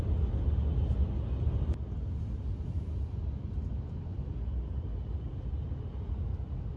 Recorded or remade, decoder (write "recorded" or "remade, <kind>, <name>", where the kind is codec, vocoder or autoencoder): recorded